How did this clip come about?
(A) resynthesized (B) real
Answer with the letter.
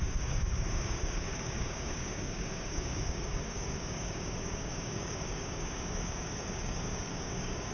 A